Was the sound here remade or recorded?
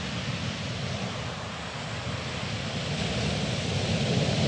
recorded